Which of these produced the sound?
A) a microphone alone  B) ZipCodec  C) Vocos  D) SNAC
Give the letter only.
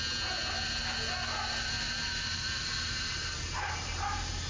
A